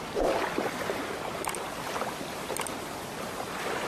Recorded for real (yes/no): no